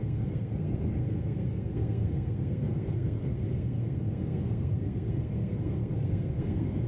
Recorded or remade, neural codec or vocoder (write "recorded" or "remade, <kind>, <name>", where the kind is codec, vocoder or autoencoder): remade, codec, SNAC